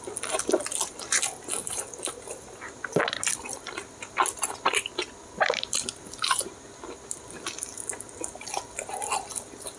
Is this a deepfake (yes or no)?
no